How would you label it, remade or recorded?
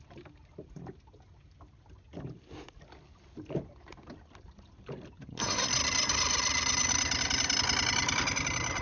recorded